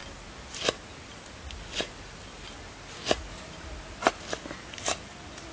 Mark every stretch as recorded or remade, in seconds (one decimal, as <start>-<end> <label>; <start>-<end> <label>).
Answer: 0.0-5.5 recorded